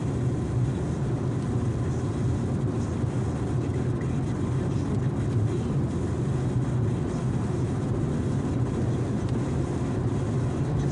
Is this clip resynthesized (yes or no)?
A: no